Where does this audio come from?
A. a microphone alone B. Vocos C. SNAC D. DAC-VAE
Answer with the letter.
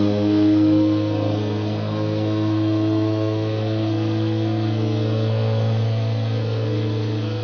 C